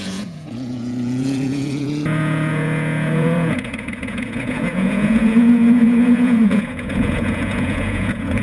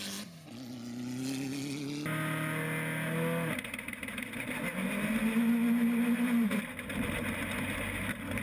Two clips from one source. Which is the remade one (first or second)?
first